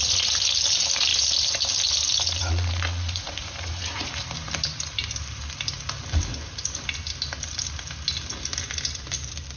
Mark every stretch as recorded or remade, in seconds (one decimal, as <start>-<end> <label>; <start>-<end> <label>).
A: 0.0-2.4 recorded; 2.4-4.2 remade; 4.2-9.6 recorded